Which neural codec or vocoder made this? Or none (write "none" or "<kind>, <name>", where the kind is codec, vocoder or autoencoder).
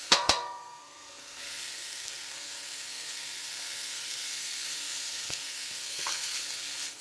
codec, SNAC